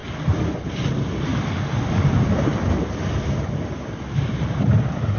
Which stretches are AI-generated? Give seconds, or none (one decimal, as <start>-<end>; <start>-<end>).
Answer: none